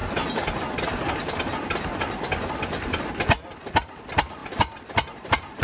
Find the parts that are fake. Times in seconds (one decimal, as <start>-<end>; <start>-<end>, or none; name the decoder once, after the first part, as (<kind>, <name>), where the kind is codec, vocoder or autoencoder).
none